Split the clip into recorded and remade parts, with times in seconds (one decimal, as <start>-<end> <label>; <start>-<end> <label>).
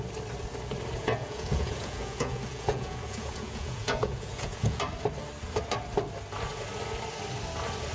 0.0-1.0 recorded; 1.0-4.8 remade; 4.8-7.9 recorded